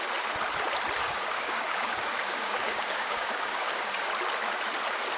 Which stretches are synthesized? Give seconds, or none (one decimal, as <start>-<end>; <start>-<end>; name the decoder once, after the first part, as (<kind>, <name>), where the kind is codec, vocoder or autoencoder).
1.0-4.1 (codec, DAC)